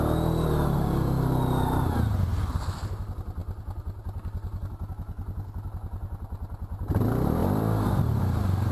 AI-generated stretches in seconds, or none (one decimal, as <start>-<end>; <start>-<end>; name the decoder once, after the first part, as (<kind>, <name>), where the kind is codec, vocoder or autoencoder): 7.4-8.0 (vocoder, BigVGAN v2)